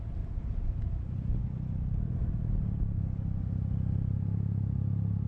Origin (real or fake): real